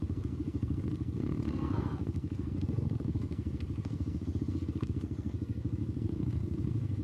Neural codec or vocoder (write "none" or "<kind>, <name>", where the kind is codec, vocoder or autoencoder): codec, SNAC